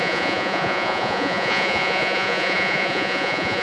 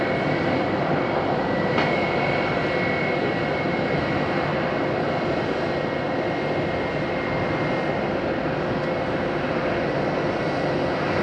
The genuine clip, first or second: second